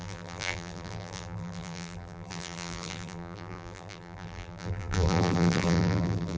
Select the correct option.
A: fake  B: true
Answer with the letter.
A